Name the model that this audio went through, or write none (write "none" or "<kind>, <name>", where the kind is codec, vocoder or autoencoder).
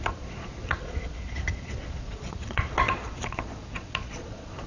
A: vocoder, Vocos